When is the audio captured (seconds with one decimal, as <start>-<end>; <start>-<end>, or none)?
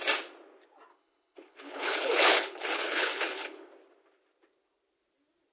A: 0.0-0.9; 3.7-5.5